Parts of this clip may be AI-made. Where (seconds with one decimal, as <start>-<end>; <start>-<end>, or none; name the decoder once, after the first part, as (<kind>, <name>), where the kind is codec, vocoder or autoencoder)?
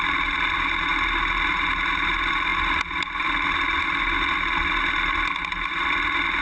none